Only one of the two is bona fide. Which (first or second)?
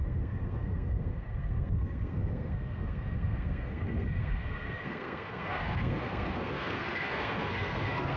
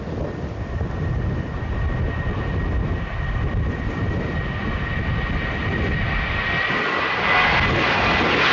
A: second